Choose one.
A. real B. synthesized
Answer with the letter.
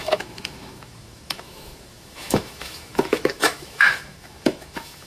B